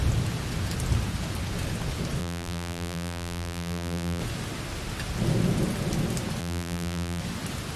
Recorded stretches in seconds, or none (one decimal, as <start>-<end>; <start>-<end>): 0.0-2.2; 4.2-6.4; 7.2-7.8